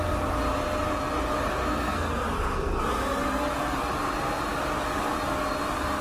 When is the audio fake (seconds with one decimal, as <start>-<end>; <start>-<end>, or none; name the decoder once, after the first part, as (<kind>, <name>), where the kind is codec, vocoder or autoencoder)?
1.6-2.8 (codec, SNAC)